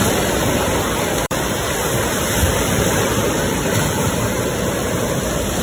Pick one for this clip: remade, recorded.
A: remade